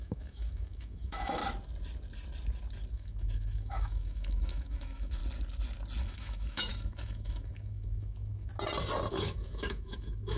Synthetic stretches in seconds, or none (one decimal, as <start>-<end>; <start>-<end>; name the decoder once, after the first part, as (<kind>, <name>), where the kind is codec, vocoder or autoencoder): 0.0-1.4 (autoencoder, DAC-VAE); 2.9-5.2; 6.0-8.5; 9.1-10.4